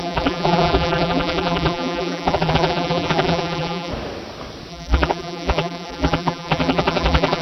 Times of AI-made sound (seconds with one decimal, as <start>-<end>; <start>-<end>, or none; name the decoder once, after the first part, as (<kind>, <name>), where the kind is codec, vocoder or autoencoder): 0.0-3.9 (vocoder, BigVGAN v2); 4.7-7.4